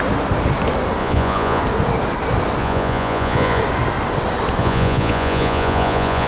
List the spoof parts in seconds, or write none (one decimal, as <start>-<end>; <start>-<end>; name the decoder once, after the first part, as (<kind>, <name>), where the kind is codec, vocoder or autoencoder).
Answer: 1.0-1.6 (vocoder, Vocos); 2.6-3.6; 4.6-6.3